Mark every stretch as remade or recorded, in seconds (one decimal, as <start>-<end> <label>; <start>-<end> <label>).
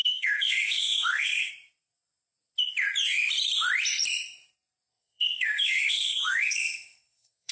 0.0-1.5 remade; 1.5-4.9 recorded; 4.9-7.5 remade